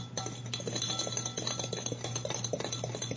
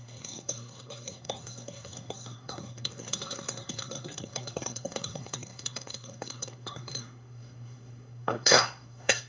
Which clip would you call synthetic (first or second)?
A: second